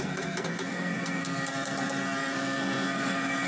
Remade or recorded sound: remade